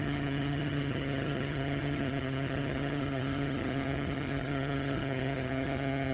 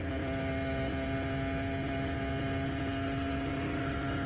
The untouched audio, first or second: second